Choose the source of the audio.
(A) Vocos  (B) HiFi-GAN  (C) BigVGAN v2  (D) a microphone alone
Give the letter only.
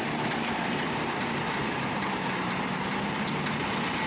D